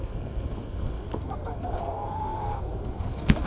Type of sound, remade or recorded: remade